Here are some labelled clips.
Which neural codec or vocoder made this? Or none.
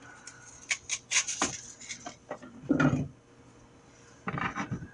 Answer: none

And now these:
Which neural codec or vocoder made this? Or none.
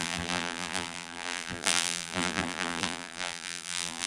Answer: vocoder, BigVGAN v2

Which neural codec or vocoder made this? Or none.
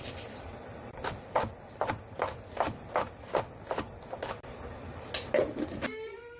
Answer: none